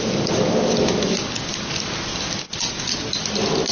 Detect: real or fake real